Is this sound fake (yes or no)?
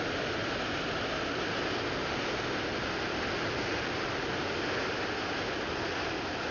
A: no